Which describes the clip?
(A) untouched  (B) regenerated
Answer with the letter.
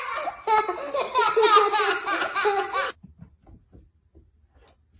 A